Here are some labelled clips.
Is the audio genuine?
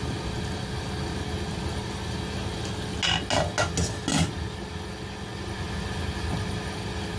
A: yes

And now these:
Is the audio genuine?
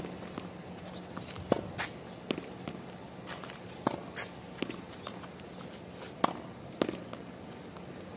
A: yes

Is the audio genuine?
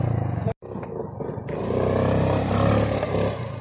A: yes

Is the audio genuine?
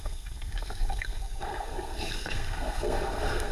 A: no